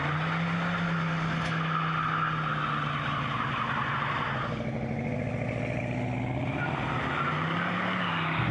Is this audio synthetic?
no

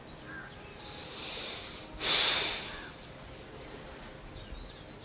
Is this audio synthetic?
no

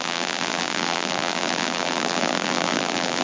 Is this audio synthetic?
yes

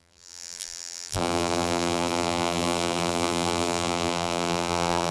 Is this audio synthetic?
yes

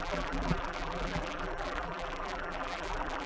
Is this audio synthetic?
yes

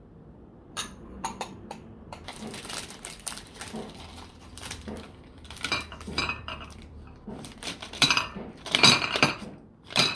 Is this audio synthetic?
yes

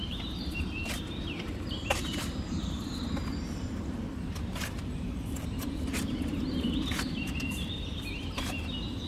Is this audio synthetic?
yes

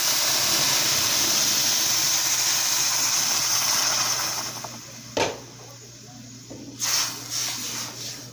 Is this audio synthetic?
no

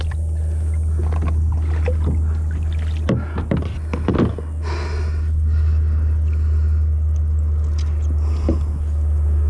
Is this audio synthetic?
no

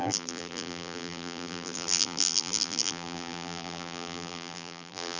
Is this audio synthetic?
yes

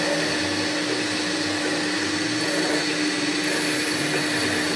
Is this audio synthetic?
no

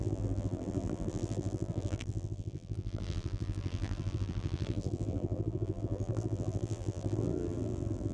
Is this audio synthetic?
yes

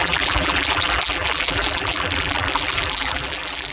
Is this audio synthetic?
yes